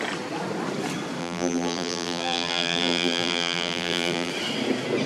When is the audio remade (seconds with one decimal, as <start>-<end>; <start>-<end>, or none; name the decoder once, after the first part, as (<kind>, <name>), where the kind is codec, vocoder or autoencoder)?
1.2-4.3 (vocoder, BigVGAN v2)